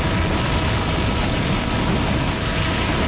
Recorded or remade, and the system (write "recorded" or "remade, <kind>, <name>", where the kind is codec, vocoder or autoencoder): recorded